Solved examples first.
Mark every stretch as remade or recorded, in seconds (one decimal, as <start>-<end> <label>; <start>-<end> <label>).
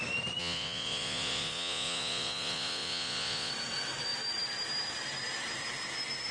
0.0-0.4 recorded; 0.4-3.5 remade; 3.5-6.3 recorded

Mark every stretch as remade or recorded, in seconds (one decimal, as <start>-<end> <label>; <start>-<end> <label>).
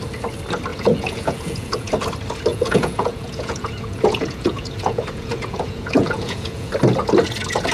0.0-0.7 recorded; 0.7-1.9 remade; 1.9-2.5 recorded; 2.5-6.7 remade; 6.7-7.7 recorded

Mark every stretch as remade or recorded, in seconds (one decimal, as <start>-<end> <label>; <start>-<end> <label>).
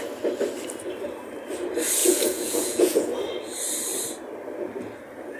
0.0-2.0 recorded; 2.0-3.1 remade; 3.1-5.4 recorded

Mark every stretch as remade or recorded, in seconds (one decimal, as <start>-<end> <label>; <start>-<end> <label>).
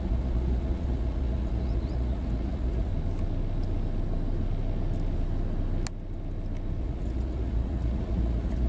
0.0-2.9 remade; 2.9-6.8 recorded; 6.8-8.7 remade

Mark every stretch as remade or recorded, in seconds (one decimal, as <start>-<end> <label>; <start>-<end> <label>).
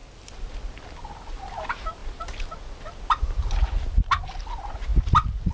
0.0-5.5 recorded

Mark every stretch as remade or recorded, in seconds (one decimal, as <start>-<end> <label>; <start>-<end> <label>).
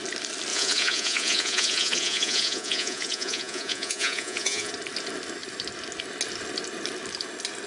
0.0-0.5 recorded; 0.5-4.7 remade; 4.7-7.7 recorded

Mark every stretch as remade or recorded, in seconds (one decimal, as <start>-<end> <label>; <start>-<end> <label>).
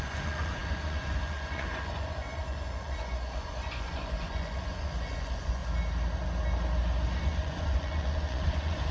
0.0-5.6 remade; 5.6-7.2 recorded; 7.2-8.9 remade